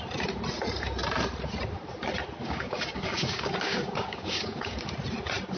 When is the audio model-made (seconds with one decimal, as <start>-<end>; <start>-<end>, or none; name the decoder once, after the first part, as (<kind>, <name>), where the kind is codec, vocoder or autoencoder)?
2.4-4.9 (codec, DAC)